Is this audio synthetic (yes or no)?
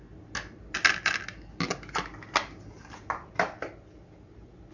no